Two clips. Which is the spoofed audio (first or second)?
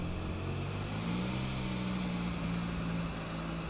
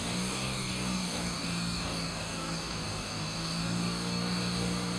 second